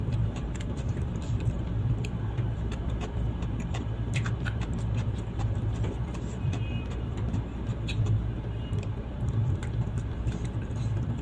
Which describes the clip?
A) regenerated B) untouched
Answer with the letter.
A